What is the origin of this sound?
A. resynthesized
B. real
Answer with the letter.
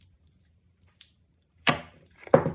A